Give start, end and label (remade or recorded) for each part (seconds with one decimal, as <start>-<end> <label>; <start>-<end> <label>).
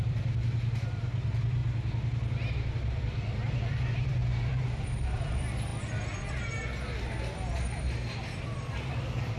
0.0-1.6 remade; 1.6-2.5 recorded; 2.5-5.7 remade; 5.7-8.4 recorded; 8.4-9.4 remade